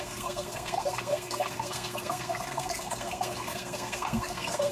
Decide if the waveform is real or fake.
fake